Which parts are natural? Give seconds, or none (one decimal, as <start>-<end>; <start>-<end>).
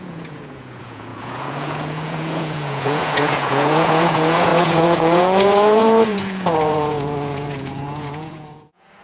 none